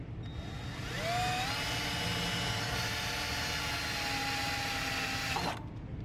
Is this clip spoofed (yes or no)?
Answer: no